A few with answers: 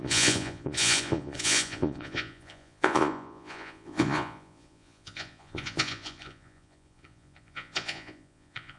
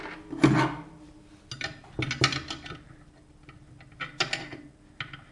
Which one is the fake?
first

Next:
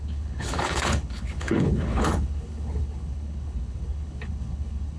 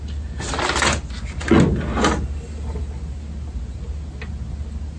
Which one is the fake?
first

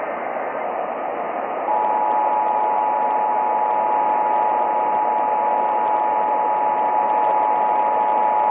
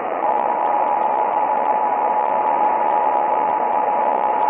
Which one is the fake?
second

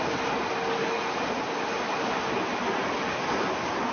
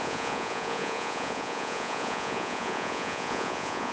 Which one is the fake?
second